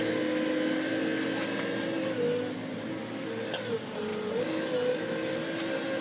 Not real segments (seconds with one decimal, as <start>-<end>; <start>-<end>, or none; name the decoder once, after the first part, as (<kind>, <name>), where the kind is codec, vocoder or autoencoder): none